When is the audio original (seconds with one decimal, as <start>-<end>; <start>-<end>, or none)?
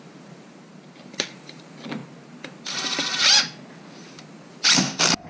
2.0-5.3